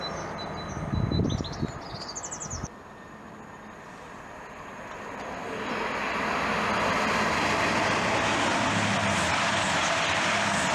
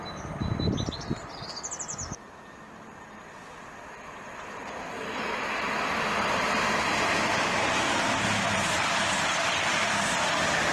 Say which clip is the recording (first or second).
first